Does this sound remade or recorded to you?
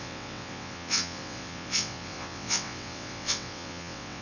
remade